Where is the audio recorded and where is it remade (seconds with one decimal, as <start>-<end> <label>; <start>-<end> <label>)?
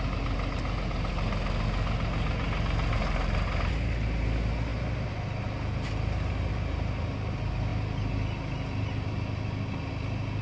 0.0-10.4 recorded